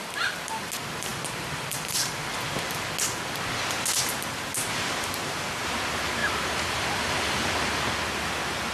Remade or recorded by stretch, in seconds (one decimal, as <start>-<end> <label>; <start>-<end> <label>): 0.0-1.1 recorded; 1.1-2.3 remade; 2.3-6.2 recorded; 6.2-7.3 remade; 7.3-8.7 recorded